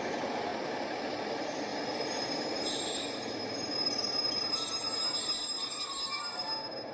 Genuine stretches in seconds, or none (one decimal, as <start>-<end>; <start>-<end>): 0.5-1.0